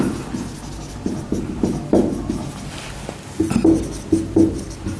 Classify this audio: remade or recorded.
recorded